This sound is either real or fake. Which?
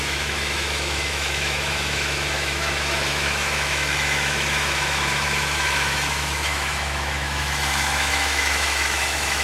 fake